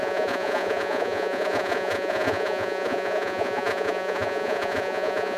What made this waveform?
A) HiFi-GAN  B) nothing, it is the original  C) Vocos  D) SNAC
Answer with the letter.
C